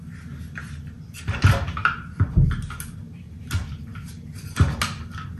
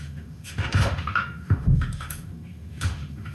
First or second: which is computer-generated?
second